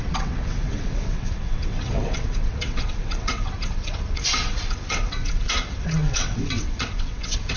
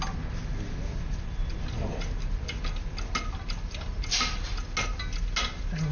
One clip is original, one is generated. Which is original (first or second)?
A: second